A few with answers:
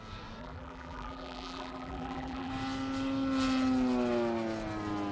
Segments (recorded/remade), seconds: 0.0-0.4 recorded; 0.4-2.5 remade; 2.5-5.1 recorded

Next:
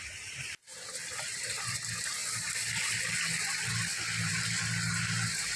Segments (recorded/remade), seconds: 0.0-5.6 recorded

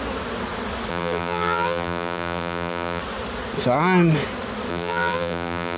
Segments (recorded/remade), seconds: 0.0-0.9 recorded; 0.9-3.0 remade; 3.0-4.7 recorded; 4.7-5.8 remade